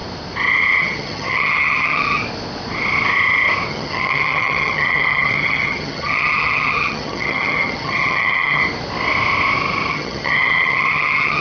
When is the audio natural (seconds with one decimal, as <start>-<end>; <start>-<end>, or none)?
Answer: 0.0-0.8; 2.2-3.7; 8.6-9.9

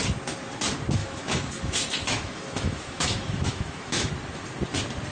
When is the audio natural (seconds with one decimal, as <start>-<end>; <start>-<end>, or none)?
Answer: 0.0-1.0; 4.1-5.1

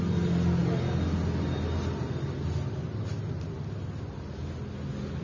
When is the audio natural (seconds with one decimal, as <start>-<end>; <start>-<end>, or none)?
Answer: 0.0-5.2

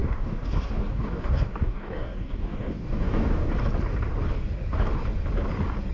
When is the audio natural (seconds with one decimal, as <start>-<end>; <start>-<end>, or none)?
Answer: 3.5-5.9